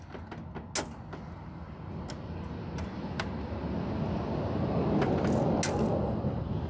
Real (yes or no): yes